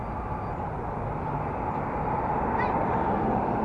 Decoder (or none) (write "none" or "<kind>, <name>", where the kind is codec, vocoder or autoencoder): none